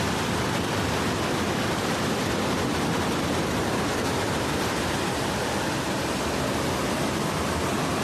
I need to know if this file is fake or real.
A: real